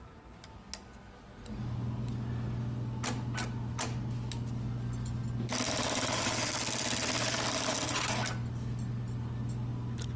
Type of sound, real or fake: real